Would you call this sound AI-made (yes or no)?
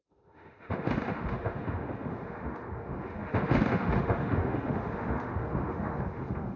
yes